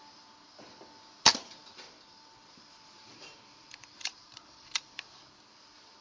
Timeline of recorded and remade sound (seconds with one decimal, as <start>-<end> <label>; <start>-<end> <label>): 0.0-1.6 recorded; 1.6-5.2 remade; 5.2-6.0 recorded